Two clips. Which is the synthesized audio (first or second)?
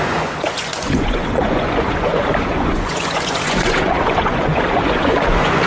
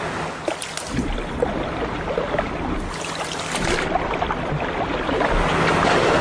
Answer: first